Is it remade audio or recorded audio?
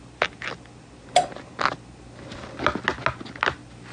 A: recorded